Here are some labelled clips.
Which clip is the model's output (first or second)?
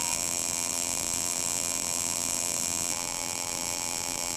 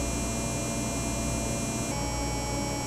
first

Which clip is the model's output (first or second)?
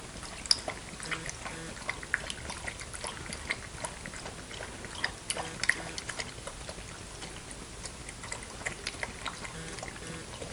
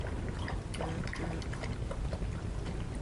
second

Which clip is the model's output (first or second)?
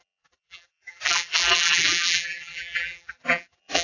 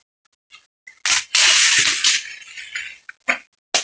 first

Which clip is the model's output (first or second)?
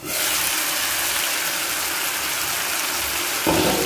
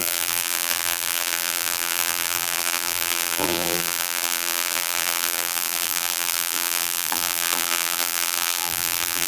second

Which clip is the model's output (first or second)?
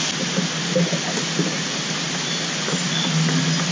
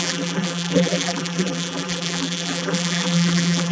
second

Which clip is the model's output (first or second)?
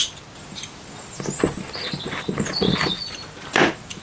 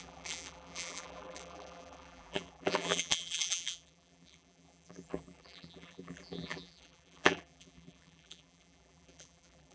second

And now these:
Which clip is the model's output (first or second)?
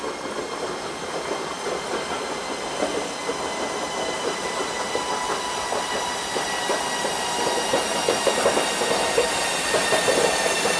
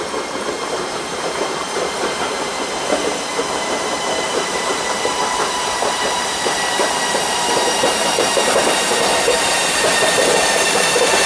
second